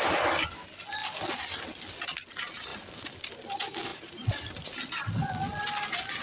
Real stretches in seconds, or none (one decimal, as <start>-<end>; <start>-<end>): 0.0-6.2